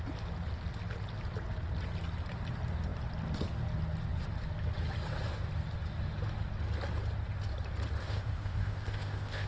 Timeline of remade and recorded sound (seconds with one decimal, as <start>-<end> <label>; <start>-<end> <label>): 0.0-8.0 recorded; 8.0-9.5 remade